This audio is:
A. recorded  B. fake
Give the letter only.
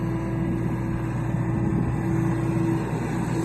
A